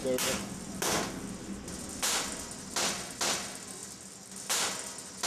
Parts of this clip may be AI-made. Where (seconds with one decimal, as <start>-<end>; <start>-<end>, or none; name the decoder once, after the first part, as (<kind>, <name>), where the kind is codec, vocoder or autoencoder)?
none